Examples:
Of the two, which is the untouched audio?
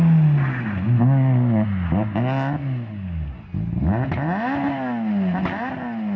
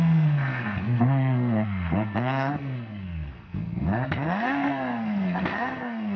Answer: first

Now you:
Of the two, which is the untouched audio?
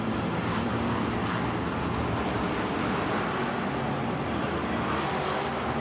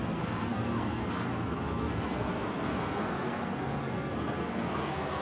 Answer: first